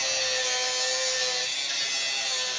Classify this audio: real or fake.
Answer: real